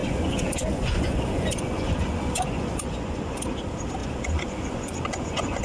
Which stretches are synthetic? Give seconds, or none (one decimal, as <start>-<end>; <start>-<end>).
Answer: 0.0-3.4; 4.0-5.6